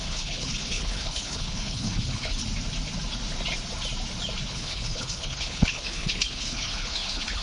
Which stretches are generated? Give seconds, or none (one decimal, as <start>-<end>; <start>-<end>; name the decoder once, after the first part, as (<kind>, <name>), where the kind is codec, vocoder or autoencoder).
0.0-2.4 (codec, HILCodec); 4.5-7.4